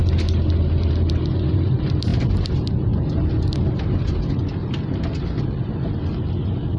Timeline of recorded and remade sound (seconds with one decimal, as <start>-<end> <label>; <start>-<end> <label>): 0.0-6.8 recorded

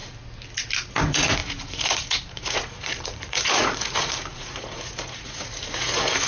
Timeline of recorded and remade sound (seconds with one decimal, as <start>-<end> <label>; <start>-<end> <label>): 0.0-1.0 recorded; 1.0-6.3 remade